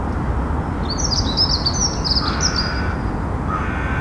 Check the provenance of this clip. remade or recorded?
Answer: recorded